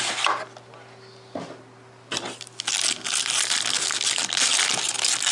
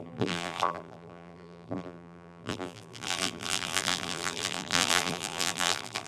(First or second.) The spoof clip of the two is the second